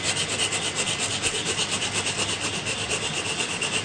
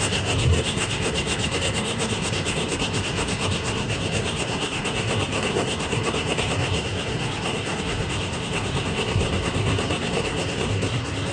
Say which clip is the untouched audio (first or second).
first